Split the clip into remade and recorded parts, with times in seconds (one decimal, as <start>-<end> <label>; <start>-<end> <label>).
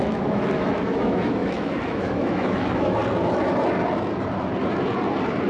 0.0-3.0 remade; 3.0-5.5 recorded